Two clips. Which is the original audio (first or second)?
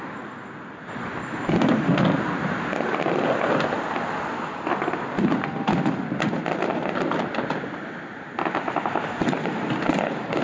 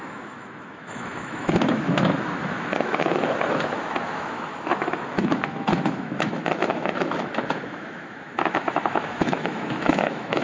first